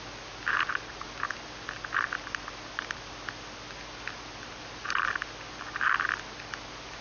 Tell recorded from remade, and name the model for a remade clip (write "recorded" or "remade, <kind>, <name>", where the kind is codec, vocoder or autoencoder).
recorded